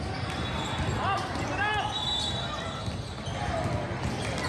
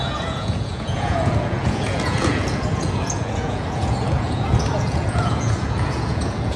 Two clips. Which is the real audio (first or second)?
first